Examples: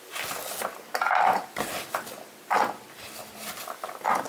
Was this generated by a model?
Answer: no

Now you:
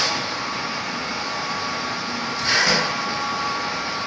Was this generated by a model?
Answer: yes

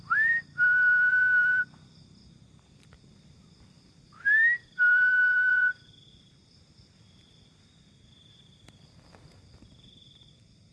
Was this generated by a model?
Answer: yes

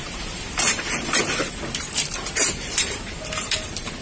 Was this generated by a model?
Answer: yes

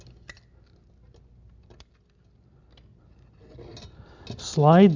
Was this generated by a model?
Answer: no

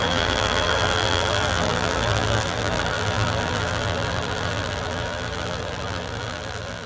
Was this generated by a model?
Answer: yes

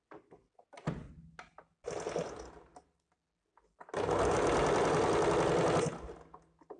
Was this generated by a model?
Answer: no